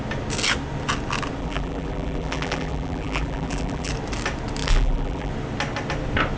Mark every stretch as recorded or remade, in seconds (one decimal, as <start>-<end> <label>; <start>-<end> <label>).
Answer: 0.0-1.4 recorded; 1.4-3.9 remade; 3.9-4.6 recorded; 4.6-5.3 remade; 5.3-6.4 recorded